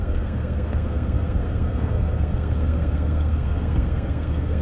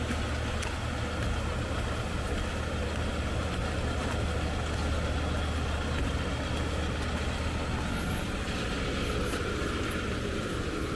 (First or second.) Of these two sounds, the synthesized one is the first